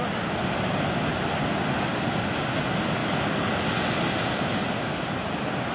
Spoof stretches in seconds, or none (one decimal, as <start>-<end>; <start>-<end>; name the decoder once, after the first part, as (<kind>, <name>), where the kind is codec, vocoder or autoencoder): none